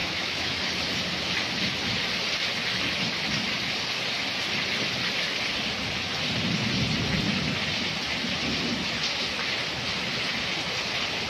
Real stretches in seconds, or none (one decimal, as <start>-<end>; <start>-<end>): 0.6-11.3